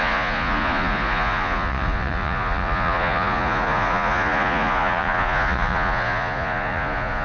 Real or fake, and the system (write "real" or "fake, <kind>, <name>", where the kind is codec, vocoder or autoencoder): fake, vocoder, Vocos